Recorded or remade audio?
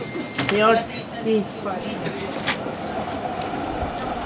recorded